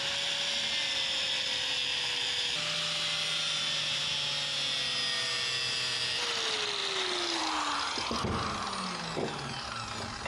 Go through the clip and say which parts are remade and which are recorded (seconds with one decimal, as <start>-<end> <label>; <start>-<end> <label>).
0.0-10.3 recorded